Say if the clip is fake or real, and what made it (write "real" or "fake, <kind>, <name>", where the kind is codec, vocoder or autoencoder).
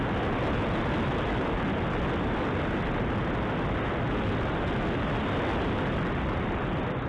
real